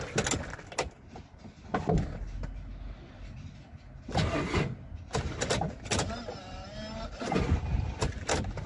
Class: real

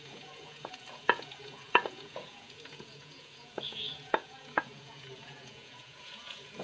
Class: fake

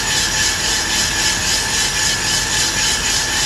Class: real